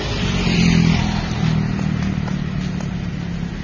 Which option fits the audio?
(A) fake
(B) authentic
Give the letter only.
B